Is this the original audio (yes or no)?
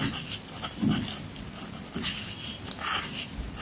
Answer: yes